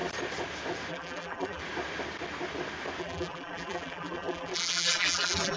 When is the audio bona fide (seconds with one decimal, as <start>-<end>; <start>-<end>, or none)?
0.0-0.9; 1.6-3.0